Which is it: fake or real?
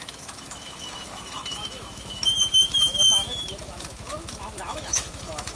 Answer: fake